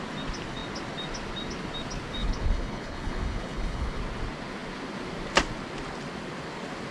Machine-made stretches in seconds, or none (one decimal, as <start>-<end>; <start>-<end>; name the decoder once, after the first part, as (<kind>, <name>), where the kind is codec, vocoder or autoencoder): 2.2-4.0 (codec, HILCodec)